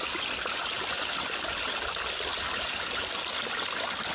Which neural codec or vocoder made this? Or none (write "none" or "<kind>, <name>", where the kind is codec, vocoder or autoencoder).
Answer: vocoder, BigVGAN v2